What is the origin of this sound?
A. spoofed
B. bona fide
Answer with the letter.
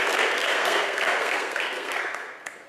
A